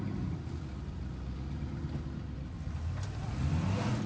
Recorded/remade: recorded